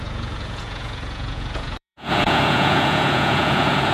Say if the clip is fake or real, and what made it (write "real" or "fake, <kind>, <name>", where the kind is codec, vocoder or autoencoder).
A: fake, vocoder, Vocos